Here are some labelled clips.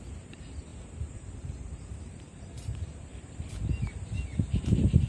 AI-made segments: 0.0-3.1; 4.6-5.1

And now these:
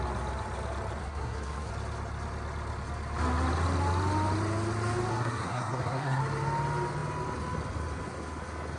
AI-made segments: 1.0-1.7; 5.1-6.2

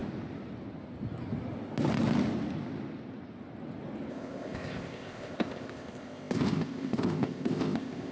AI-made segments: 4.1-8.1

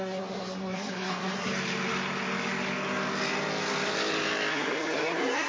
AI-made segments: 0.0-1.5; 4.5-5.5

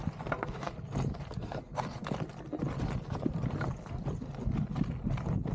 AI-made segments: none